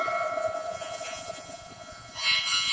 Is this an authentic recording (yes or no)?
no